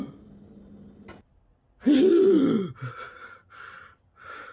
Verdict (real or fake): real